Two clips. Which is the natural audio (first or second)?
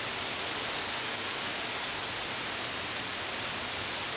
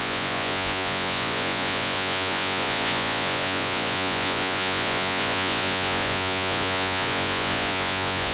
first